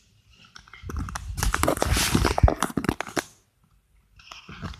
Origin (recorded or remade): recorded